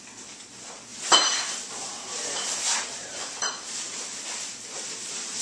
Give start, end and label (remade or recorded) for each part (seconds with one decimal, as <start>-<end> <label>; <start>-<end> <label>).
0.0-0.9 recorded; 0.9-4.0 remade; 4.0-5.4 recorded